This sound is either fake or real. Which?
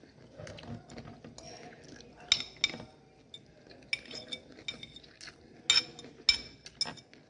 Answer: real